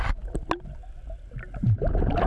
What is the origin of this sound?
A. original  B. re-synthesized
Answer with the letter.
A